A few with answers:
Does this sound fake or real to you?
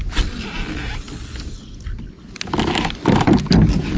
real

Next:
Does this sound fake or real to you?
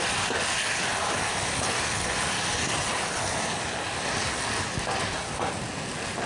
real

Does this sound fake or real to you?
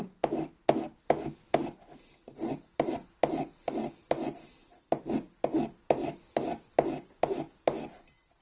real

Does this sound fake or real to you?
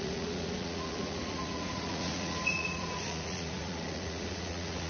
fake